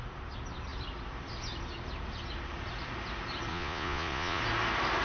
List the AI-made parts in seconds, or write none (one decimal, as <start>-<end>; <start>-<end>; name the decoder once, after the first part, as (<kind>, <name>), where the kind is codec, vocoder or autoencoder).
3.5-4.4 (vocoder, Vocos)